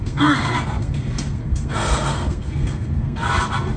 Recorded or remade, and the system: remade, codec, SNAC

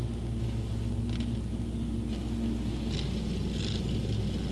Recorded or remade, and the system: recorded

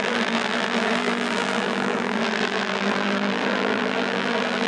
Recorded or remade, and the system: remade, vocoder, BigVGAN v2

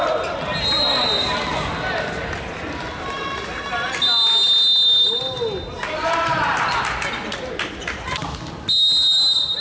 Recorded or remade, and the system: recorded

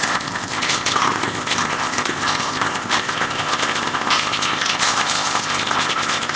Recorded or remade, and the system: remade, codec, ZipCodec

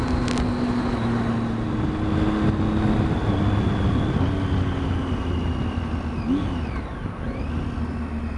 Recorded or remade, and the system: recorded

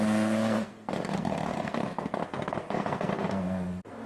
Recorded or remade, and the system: remade, codec, SNAC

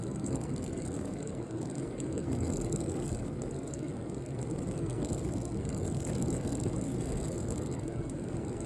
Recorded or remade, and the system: remade, codec, SNAC